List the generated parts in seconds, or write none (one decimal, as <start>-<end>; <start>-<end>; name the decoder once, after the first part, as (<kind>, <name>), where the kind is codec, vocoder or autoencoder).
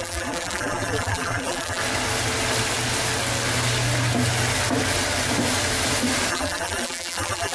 0.0-1.8 (vocoder, BigVGAN v2); 6.3-7.5